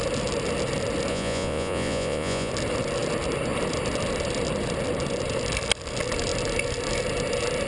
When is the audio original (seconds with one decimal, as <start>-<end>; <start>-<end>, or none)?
0.0-1.1; 2.5-7.7